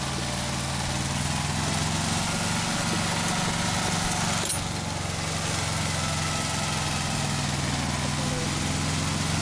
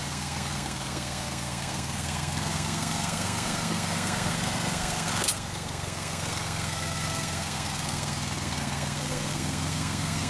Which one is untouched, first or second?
first